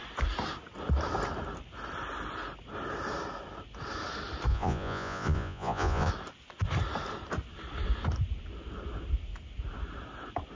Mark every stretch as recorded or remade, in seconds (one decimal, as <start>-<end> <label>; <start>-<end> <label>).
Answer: 0.0-4.5 recorded; 4.5-6.1 remade; 6.1-10.5 recorded